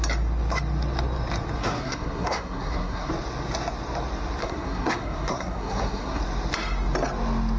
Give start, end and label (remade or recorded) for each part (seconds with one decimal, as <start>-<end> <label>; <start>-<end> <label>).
0.0-1.6 recorded; 1.6-3.1 remade; 3.1-4.4 recorded; 4.4-6.2 remade; 6.2-7.6 recorded